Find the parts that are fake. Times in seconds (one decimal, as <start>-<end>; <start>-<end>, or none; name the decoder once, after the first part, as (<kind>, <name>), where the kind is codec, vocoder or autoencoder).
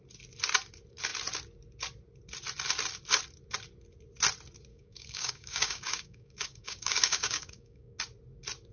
4.7-8.0 (codec, DAC)